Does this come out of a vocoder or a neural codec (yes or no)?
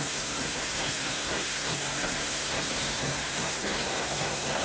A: yes